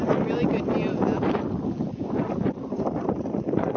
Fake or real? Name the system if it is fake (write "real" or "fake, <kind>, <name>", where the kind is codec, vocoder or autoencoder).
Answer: real